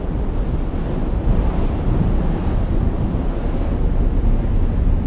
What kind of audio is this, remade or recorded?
recorded